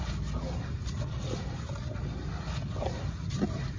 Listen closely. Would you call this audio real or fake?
real